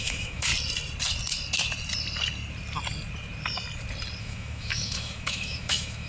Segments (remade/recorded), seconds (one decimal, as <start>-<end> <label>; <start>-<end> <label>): 0.0-0.5 remade; 0.5-4.2 recorded; 4.2-6.1 remade